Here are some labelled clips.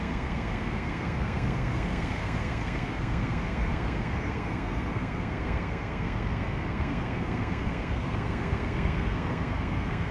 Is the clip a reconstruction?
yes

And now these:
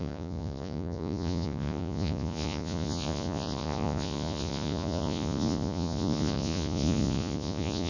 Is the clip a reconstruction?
yes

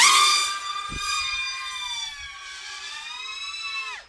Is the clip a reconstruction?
no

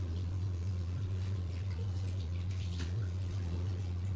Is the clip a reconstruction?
yes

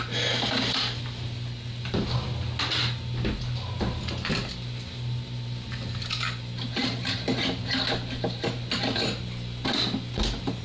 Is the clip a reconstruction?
no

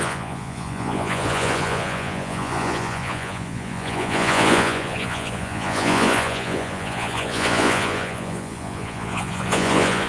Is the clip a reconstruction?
yes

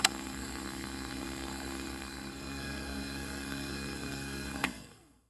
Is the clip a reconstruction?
yes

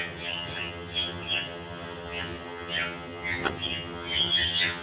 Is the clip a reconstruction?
yes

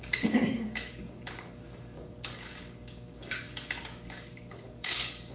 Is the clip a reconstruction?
yes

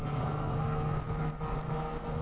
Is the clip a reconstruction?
yes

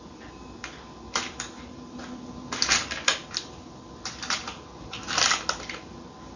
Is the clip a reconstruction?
no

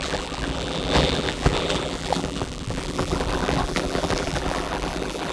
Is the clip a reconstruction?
yes